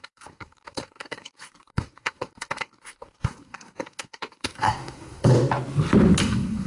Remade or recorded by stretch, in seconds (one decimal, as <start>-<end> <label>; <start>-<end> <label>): 0.0-5.3 remade; 5.3-6.2 recorded; 6.2-6.7 remade